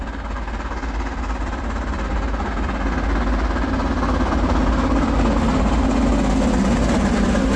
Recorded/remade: recorded